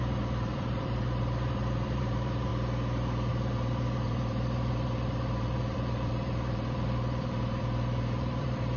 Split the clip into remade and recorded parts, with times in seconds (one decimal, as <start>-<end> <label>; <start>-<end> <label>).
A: 0.0-2.5 remade; 2.5-3.3 recorded; 3.3-8.8 remade

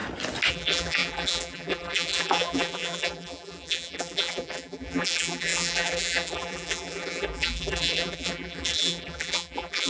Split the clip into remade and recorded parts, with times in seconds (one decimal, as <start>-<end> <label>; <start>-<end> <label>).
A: 0.0-0.5 recorded; 0.5-9.9 remade

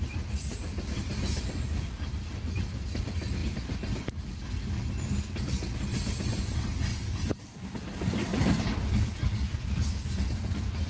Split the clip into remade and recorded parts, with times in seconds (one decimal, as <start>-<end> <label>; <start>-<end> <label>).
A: 0.0-6.9 recorded; 6.9-7.6 remade; 7.6-8.3 recorded; 8.3-9.9 remade; 9.9-10.9 recorded

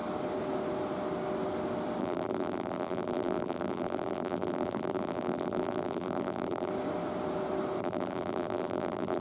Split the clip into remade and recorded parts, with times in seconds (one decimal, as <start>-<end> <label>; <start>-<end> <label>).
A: 0.0-2.0 recorded; 2.0-6.7 remade; 6.7-7.8 recorded; 7.8-9.2 remade

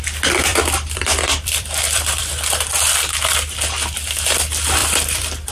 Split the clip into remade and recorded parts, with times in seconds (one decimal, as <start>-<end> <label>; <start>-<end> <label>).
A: 0.0-0.5 recorded; 0.5-2.9 remade; 2.9-4.8 recorded; 4.8-5.5 remade

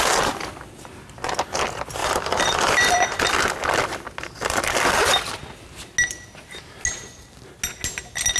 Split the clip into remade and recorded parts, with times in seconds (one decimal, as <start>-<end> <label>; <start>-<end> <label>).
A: 0.0-2.0 recorded; 2.0-3.2 remade; 3.2-8.4 recorded

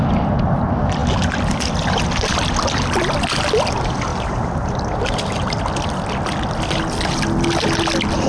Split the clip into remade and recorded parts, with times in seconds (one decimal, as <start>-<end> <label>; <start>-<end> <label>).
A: 0.0-4.1 recorded; 4.1-5.6 remade; 5.6-8.3 recorded

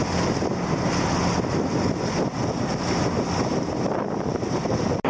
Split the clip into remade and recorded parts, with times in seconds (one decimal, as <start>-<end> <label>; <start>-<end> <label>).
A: 0.0-5.1 recorded